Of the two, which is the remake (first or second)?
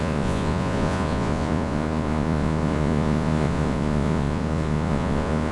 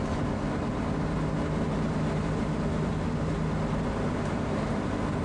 first